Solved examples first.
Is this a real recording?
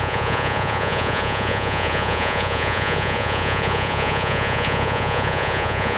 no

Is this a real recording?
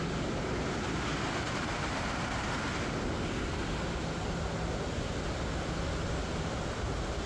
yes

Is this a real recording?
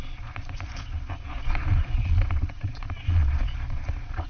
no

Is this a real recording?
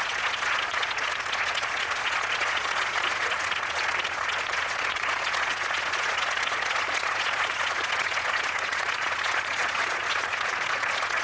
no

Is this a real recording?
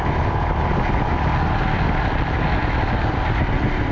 yes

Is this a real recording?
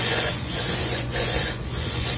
no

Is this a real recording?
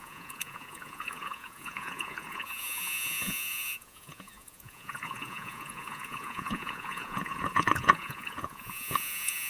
no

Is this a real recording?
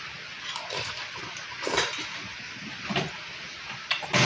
yes